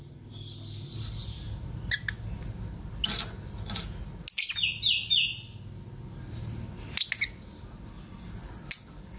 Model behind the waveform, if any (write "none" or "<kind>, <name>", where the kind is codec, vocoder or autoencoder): none